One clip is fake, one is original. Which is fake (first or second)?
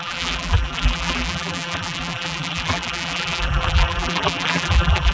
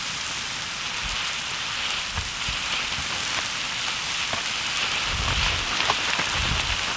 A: first